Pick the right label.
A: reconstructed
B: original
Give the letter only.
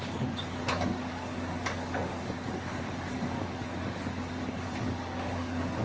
A